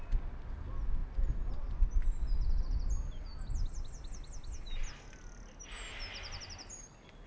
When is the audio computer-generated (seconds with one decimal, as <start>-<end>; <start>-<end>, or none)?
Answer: none